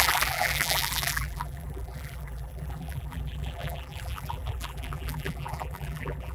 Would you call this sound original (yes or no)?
no